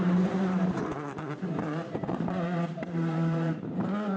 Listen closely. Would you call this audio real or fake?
fake